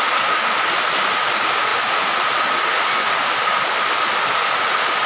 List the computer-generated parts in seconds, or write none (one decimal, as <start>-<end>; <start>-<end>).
none